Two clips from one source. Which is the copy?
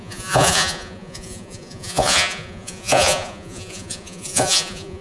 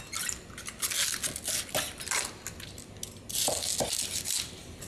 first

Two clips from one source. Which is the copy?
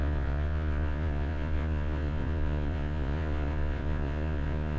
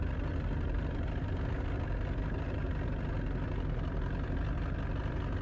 first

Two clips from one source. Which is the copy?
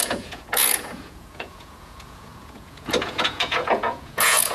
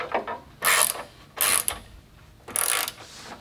first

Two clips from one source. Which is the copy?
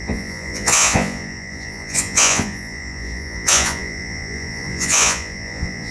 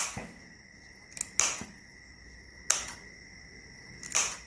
first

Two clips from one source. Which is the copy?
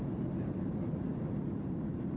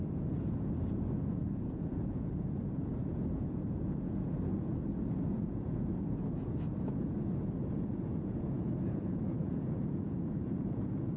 second